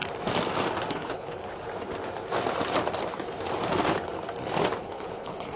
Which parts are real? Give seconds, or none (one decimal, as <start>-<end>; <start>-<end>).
0.0-0.9; 1.4-4.8